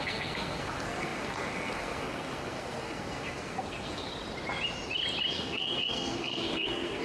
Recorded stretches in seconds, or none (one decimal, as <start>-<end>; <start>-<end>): 4.1-5.3